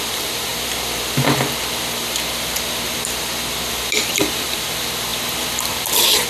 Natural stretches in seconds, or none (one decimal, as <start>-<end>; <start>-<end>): 0.5-3.7